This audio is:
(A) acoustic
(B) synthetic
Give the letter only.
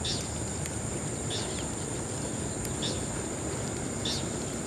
A